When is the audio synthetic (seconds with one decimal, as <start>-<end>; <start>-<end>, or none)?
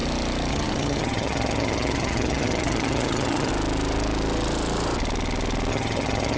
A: 0.5-3.5; 5.7-6.4